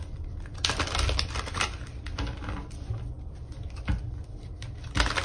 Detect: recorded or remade recorded